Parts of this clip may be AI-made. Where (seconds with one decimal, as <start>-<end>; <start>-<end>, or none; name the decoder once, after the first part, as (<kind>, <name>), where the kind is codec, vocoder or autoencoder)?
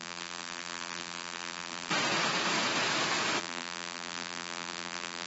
0.0-1.9 (vocoder, BigVGAN v2); 3.4-5.3